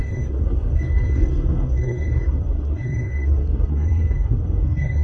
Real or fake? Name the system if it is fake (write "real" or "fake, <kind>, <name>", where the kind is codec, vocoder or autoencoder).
fake, codec, SNAC